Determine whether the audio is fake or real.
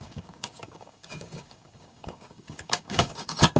fake